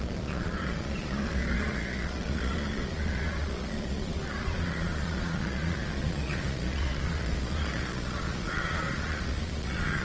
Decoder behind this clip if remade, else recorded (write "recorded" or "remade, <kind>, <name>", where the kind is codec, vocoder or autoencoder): remade, vocoder, Vocos